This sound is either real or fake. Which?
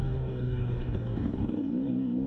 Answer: fake